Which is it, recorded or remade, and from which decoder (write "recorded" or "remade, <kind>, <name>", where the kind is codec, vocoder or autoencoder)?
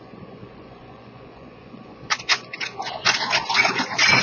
remade, vocoder, Vocos